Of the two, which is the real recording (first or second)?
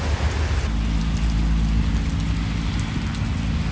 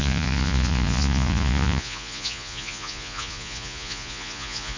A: first